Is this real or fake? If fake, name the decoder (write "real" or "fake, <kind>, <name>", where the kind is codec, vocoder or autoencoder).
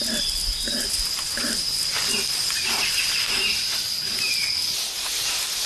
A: real